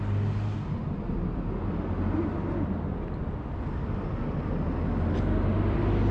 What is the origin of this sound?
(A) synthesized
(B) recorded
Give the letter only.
B